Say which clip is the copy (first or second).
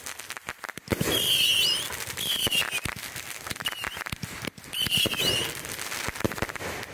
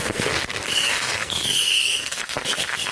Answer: second